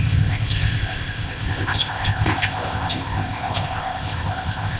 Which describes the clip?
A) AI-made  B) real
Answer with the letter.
A